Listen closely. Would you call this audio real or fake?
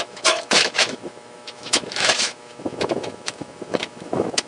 fake